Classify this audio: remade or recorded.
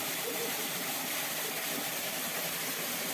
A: remade